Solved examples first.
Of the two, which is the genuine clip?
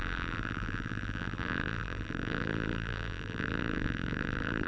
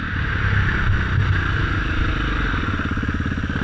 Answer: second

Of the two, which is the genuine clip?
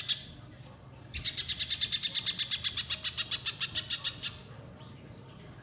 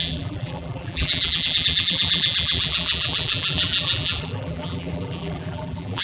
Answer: first